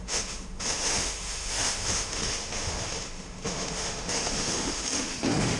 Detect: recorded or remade remade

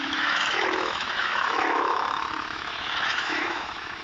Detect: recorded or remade remade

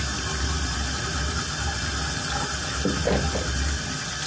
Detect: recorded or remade recorded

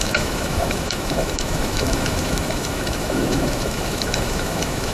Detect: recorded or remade remade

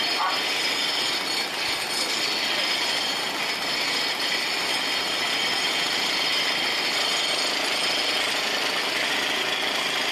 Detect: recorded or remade recorded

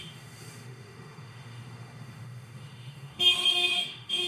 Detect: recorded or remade remade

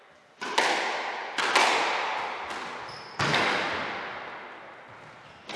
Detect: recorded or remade recorded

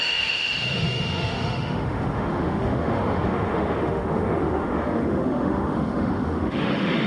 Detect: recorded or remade remade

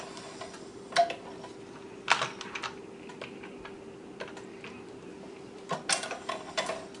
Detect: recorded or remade recorded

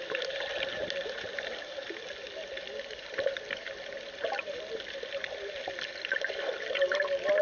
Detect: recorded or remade recorded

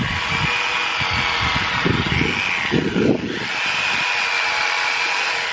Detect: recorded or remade recorded